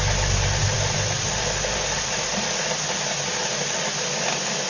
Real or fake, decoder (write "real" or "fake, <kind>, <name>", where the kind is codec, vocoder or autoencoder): real